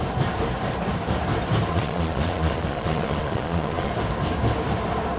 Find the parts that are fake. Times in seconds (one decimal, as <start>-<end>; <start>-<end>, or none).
1.7-3.9